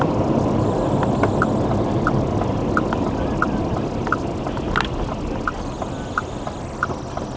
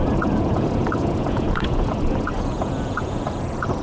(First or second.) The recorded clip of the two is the first